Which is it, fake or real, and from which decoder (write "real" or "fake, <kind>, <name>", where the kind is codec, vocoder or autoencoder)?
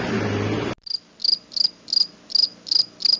real